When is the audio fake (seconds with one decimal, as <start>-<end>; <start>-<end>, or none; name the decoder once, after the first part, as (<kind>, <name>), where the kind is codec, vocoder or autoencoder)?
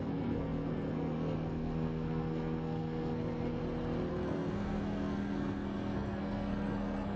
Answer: 0.0-3.6 (codec, SNAC); 4.1-7.2